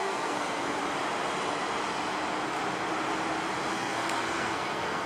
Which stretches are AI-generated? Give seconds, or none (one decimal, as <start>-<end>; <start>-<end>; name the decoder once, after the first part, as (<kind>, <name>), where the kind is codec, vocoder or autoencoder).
0.0-0.8 (codec, SNAC); 3.7-5.1